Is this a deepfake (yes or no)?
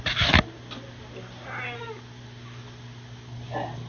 no